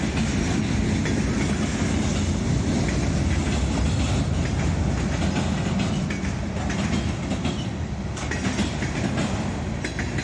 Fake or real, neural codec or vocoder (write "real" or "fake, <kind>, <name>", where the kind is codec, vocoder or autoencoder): real